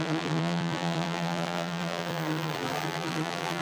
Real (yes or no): no